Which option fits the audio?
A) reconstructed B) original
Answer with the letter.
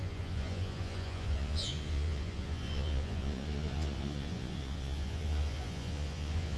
A